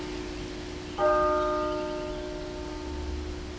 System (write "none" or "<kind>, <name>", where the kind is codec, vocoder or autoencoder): none